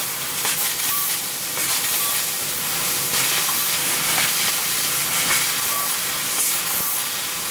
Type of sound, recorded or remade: remade